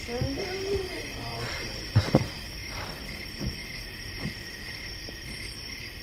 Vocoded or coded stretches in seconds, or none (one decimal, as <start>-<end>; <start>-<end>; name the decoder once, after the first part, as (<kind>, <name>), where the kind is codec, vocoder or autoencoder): 1.3-2.1 (vocoder, BigVGAN v2)